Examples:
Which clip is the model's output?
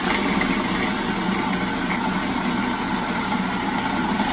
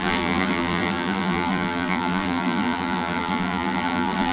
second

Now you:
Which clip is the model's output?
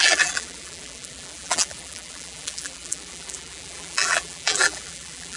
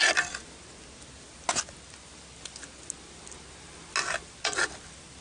first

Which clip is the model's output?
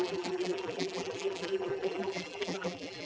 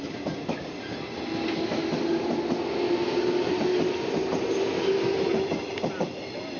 first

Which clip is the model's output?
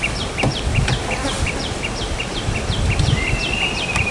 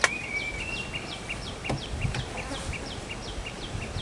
first